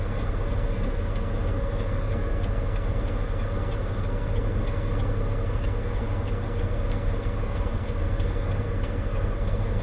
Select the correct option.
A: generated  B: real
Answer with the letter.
A